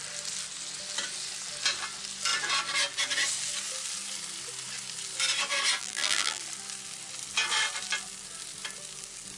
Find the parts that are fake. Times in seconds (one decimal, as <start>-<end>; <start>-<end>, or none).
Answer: 5.8-6.4